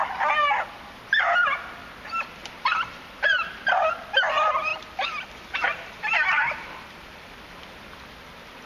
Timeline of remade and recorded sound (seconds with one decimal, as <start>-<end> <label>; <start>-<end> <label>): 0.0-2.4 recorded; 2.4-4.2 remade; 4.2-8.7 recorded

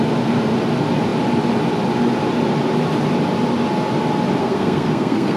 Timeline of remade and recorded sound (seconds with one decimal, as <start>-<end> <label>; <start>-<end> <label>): 0.0-4.4 recorded; 4.4-5.4 remade

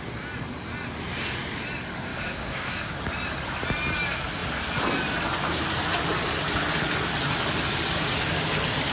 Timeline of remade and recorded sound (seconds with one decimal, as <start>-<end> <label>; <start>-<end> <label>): 0.0-2.1 recorded; 2.1-3.0 remade; 3.0-8.9 recorded

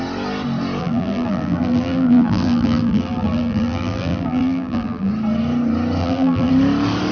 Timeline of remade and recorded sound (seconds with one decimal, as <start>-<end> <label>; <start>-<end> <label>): 0.0-0.8 recorded; 0.8-5.1 remade; 5.1-6.0 recorded; 6.0-6.5 remade; 6.5-7.1 recorded